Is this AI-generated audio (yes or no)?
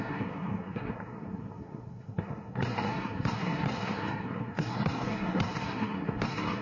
yes